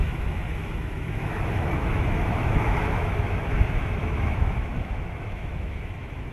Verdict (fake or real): fake